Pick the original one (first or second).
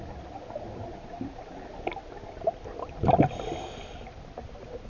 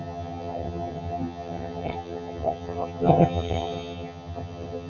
first